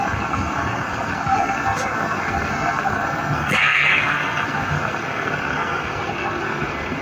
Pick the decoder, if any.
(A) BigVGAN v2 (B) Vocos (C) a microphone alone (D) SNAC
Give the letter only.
D